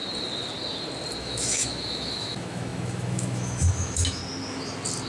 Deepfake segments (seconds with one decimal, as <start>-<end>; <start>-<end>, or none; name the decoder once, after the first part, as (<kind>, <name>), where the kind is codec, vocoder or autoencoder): 1.2-4.2 (autoencoder, DAC-VAE)